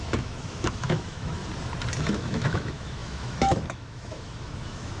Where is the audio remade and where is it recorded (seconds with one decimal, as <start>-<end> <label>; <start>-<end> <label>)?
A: 0.0-1.4 remade; 1.4-2.0 recorded; 2.0-5.0 remade